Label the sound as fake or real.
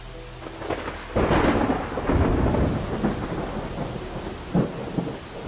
real